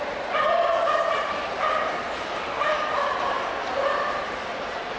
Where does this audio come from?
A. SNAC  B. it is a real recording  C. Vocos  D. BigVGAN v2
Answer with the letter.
D